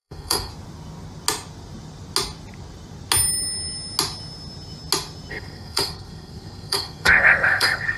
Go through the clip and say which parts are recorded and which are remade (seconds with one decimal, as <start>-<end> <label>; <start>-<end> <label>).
0.0-0.5 remade; 0.5-5.3 recorded; 5.3-8.0 remade